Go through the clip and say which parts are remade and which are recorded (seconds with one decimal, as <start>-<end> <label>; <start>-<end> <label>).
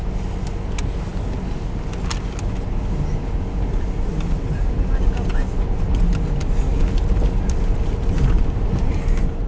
0.0-9.5 recorded